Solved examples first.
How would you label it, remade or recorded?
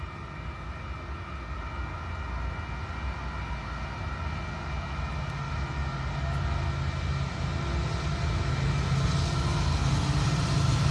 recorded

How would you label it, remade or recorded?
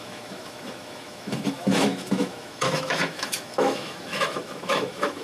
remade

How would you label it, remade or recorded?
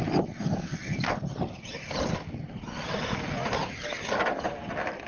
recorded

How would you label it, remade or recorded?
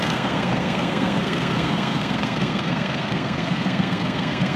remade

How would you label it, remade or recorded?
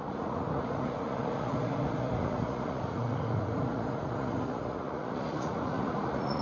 remade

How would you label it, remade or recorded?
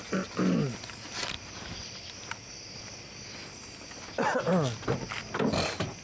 recorded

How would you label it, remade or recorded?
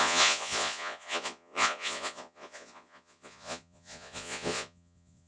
remade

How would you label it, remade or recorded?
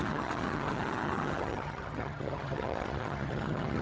remade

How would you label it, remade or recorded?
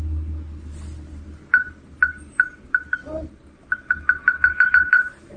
recorded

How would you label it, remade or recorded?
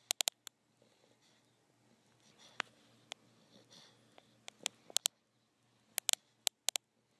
recorded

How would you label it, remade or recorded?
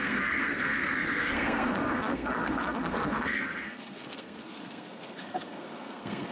remade